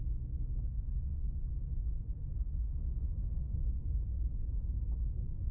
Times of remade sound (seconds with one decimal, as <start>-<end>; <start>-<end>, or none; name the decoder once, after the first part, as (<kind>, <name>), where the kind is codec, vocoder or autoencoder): 0.0-1.1 (autoencoder, DAC-VAE); 2.8-3.6; 5.1-5.5